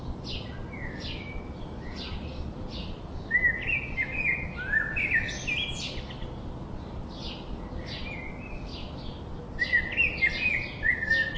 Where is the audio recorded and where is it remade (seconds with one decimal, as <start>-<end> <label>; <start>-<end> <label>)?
0.0-11.4 recorded